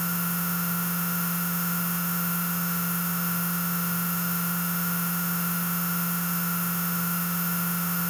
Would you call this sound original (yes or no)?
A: no